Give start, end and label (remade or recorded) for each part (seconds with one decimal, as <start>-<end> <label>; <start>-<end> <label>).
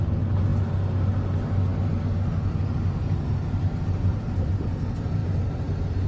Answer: 0.0-6.1 recorded